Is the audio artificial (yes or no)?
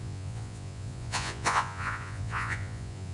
yes